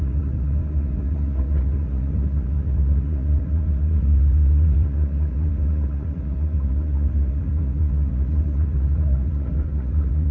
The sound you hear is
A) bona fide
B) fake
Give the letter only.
B